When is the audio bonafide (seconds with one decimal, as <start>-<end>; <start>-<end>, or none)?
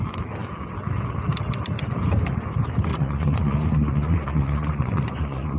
0.0-2.9